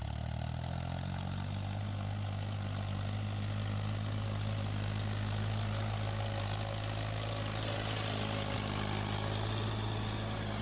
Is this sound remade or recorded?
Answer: recorded